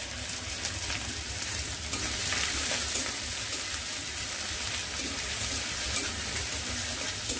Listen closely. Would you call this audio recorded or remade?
recorded